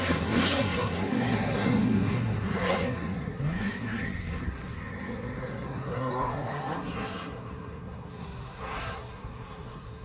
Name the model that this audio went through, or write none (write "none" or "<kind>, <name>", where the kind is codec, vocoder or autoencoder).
codec, SNAC